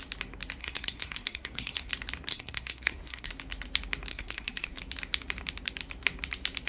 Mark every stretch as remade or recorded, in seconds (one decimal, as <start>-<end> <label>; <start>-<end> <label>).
0.0-0.6 recorded; 0.6-1.9 remade; 1.9-2.3 recorded; 2.3-3.3 remade; 3.3-4.1 recorded; 4.1-4.8 remade; 4.8-6.7 recorded

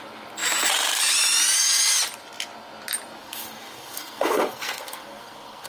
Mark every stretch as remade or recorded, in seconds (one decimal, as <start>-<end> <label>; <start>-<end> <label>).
0.0-3.2 recorded; 3.2-5.7 remade

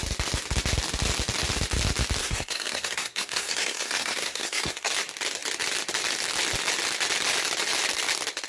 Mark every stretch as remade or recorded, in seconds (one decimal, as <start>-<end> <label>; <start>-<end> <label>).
0.0-2.2 recorded; 2.2-4.9 remade; 4.9-8.5 recorded